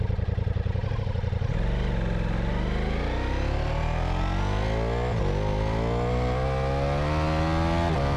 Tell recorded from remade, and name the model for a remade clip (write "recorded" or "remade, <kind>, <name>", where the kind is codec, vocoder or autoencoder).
recorded